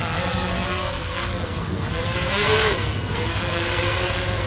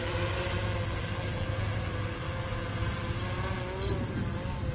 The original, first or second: second